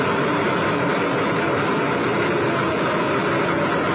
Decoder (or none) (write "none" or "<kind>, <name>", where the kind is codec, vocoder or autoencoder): none